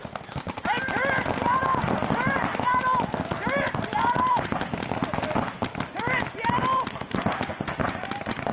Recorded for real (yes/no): yes